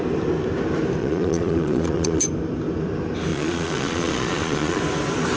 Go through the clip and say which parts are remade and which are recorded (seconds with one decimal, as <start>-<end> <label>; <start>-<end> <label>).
0.0-1.0 recorded; 1.0-2.2 remade; 2.2-3.3 recorded; 3.3-4.8 remade; 4.8-5.4 recorded